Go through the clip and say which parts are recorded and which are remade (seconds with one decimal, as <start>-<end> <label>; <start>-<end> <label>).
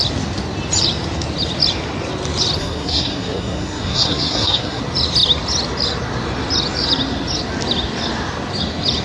0.0-2.6 recorded; 2.6-4.8 remade; 4.8-9.0 recorded